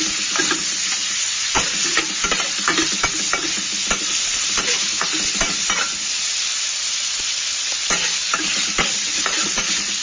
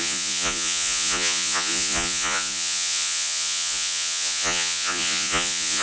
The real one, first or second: first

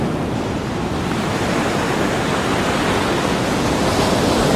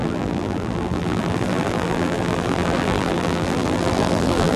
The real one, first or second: first